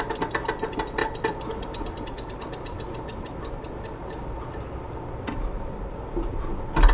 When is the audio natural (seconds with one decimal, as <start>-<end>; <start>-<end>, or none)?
0.0-3.1; 3.6-6.9